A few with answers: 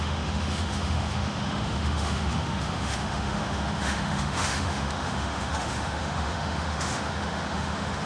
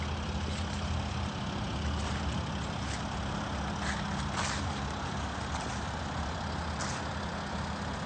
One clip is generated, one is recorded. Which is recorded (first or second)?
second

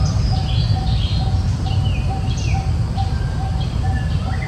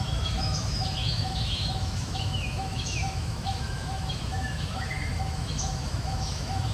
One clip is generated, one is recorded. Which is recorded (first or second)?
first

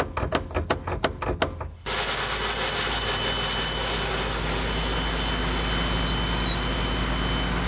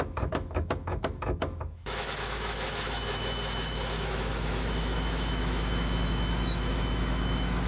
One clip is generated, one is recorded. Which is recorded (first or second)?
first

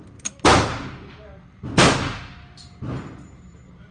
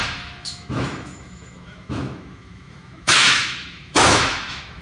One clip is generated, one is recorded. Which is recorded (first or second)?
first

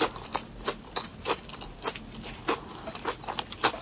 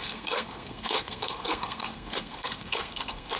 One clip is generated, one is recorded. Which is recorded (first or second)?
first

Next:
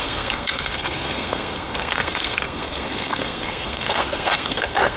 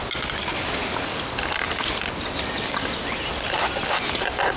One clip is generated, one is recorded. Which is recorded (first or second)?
second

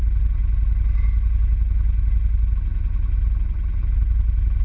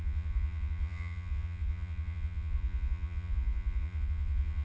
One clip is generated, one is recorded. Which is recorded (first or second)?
first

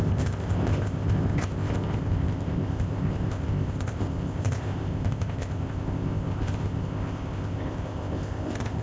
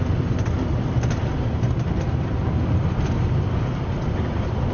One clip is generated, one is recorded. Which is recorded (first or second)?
second